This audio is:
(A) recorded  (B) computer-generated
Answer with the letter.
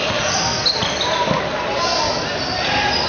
A